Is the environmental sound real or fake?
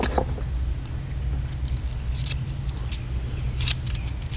real